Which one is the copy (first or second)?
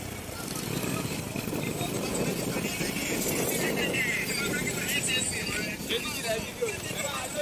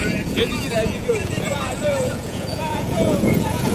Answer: second